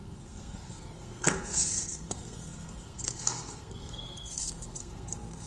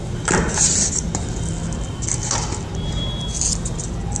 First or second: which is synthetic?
first